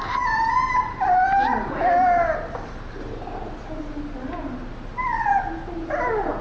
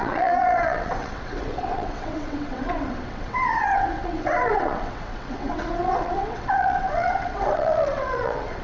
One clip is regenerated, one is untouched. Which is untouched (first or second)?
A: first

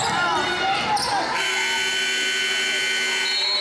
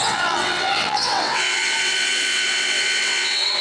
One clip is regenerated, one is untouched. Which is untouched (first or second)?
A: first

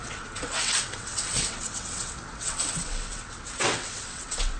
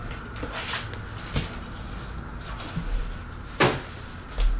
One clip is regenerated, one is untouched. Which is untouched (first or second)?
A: second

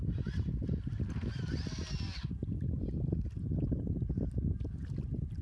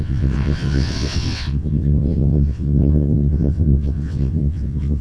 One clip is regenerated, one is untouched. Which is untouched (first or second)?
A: first